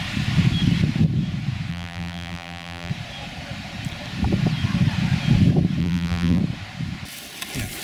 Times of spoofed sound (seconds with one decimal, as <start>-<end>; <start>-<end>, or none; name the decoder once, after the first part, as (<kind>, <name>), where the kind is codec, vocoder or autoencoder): 1.7-2.9 (vocoder, BigVGAN v2); 5.8-6.4